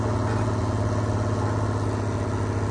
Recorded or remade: recorded